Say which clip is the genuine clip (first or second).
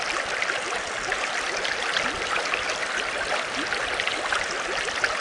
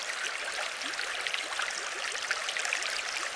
first